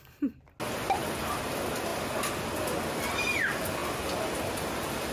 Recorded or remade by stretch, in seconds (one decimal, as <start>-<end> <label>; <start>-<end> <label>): 0.0-5.1 recorded